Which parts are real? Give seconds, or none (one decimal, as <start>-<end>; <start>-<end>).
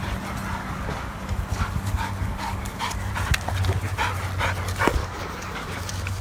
0.0-0.6; 3.1-5.0